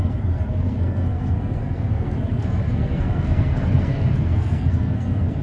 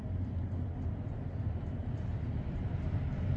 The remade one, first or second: first